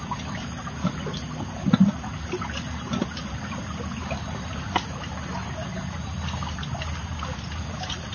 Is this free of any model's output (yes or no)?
yes